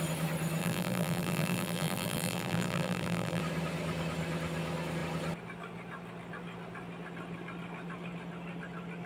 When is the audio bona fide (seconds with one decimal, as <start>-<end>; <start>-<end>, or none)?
0.0-0.6; 3.4-9.1